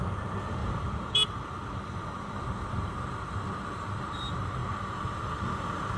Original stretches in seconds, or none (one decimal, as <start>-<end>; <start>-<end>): 0.0-0.6; 2.4-6.0